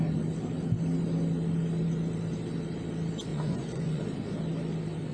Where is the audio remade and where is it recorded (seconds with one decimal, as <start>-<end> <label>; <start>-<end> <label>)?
0.0-3.3 recorded; 3.3-4.0 remade; 4.0-5.1 recorded